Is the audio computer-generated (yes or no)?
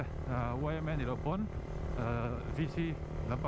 no